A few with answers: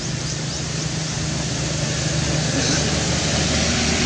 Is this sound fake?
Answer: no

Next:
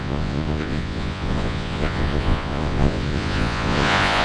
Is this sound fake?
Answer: yes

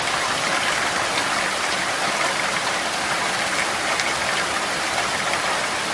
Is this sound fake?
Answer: yes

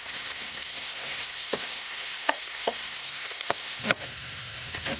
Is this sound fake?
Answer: yes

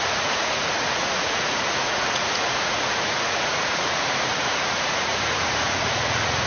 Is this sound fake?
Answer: yes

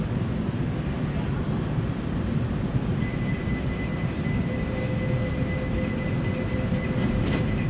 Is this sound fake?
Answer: no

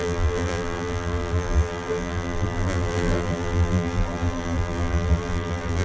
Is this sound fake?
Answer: yes